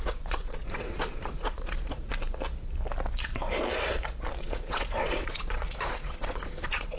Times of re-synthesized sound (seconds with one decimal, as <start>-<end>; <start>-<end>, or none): 0.0-2.1; 4.4-7.0